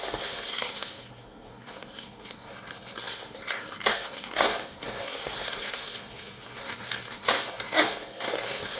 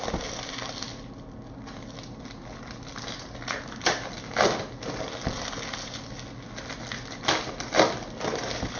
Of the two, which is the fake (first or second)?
first